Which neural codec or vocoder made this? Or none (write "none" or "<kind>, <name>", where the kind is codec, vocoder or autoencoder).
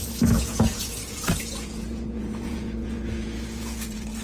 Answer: vocoder, Vocos